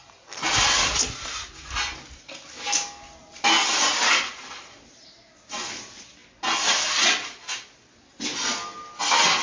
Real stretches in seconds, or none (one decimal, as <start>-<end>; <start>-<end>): 0.0-9.4